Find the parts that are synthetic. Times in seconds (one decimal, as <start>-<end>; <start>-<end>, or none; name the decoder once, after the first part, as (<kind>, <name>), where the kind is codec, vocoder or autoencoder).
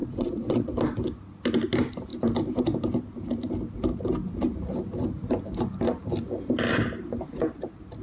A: 0.0-0.7 (vocoder, Vocos)